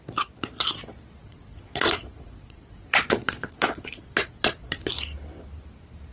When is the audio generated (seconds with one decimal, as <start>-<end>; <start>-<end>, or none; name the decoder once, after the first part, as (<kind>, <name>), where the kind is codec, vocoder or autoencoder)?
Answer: 1.2-4.9 (vocoder, Vocos)